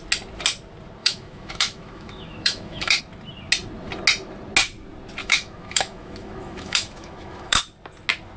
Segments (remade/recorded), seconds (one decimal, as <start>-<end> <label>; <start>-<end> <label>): 0.0-1.0 recorded; 1.0-3.0 remade; 3.0-5.2 recorded; 5.2-7.6 remade; 7.6-8.4 recorded